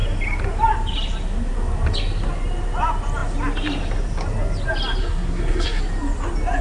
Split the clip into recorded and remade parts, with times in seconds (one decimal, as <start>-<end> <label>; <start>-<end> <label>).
0.0-5.0 recorded; 5.0-5.8 remade; 5.8-6.6 recorded